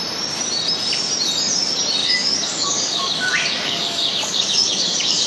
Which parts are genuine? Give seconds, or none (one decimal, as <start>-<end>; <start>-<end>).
0.0-2.0